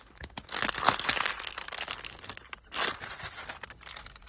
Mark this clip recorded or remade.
recorded